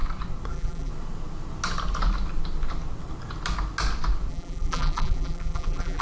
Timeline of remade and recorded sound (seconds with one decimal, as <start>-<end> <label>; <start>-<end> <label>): 0.0-0.5 recorded; 0.5-0.9 remade; 0.9-4.3 recorded; 4.3-6.0 remade